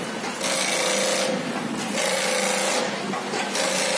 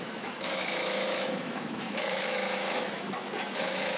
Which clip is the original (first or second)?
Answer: first